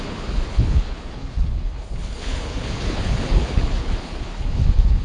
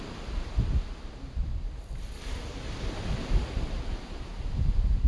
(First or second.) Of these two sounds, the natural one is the second